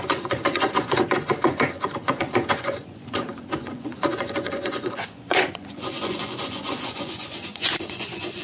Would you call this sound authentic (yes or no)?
no